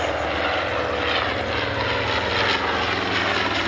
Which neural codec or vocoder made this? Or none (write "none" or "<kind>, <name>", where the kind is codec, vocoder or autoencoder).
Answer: none